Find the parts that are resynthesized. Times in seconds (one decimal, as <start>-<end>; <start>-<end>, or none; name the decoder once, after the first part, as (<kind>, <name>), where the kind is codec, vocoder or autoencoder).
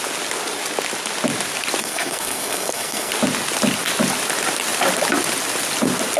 1.8-3.1 (codec, SNAC)